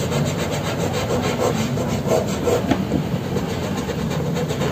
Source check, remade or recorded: recorded